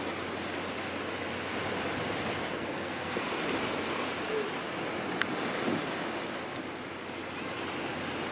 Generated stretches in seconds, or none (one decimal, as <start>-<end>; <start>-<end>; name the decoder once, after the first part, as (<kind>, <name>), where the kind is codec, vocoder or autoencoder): 2.4-3.4 (codec, SNAC)